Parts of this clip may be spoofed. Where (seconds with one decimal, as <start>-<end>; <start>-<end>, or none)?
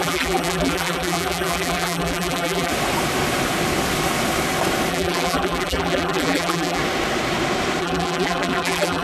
0.0-2.7; 4.9-6.8; 7.8-9.0